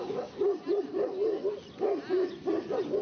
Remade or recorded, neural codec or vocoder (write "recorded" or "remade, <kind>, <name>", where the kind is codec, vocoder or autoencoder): recorded